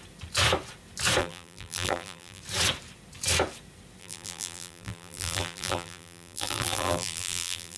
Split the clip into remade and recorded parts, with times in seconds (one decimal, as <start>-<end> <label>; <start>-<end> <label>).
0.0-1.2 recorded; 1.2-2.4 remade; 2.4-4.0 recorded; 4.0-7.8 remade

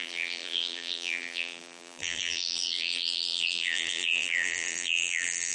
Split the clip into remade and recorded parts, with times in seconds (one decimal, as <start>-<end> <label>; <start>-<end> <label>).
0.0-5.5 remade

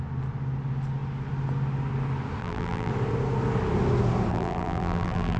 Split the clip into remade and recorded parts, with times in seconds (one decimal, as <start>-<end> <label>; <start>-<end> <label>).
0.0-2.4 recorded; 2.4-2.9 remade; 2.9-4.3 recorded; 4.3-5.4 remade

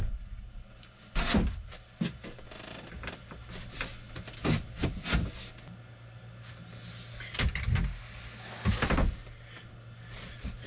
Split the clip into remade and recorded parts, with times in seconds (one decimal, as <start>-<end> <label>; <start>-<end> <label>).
0.0-10.7 recorded

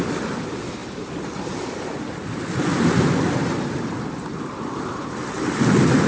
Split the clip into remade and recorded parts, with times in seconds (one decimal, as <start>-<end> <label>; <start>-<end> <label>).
0.0-0.8 recorded; 0.8-4.5 remade; 4.5-6.1 recorded

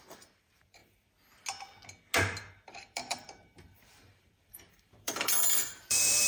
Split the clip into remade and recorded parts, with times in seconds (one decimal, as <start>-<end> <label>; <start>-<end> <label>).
0.0-0.8 remade; 0.8-2.5 recorded; 2.5-6.3 remade